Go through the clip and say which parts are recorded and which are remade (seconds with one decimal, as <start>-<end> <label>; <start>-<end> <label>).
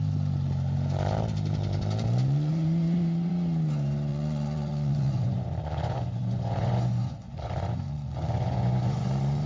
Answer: 0.0-2.5 recorded; 2.5-3.3 remade; 3.3-4.1 recorded; 4.1-9.1 remade; 9.1-9.5 recorded